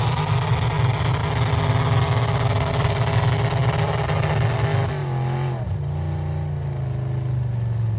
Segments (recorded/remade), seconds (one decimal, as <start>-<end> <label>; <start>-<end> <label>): 0.0-8.0 recorded